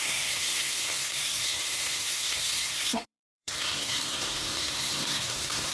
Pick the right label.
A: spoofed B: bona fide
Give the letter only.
A